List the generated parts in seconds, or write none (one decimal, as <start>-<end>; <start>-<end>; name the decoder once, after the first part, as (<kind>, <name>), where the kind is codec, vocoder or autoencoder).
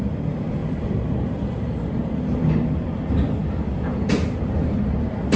0.6-2.1 (vocoder, BigVGAN v2)